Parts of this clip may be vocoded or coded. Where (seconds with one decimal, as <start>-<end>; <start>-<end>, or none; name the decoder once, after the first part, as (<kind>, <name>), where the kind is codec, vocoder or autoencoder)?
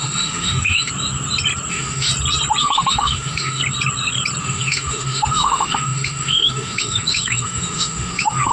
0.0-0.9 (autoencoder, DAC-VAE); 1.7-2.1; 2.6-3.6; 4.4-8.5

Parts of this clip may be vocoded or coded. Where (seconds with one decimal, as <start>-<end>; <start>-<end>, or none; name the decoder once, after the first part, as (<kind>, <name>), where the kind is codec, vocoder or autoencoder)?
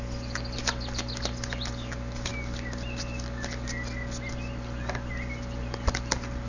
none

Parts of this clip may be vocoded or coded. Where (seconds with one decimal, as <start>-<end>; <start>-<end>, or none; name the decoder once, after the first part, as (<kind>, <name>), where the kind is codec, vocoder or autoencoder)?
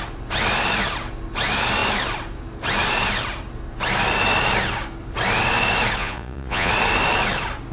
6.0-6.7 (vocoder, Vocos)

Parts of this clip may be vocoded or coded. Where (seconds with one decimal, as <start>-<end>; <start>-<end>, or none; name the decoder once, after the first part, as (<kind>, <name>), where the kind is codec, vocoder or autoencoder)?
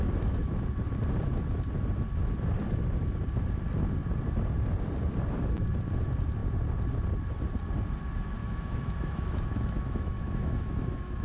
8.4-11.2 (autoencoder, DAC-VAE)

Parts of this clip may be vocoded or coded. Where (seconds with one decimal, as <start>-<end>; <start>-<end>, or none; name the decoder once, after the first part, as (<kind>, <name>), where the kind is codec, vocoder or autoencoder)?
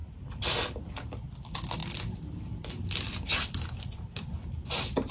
none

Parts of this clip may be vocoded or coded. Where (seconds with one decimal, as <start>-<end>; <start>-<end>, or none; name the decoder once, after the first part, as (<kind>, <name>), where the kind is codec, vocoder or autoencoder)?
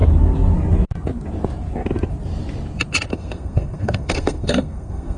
3.1-5.2 (codec, SNAC)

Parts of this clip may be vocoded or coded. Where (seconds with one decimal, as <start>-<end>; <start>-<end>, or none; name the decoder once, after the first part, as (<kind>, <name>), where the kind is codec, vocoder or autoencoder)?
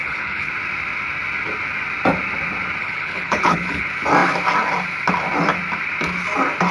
0.0-0.5 (codec, HILCodec); 2.8-3.8